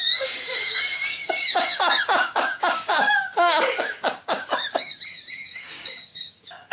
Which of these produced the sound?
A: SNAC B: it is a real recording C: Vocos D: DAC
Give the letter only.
D